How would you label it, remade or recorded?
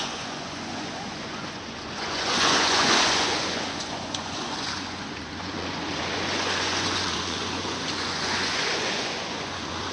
remade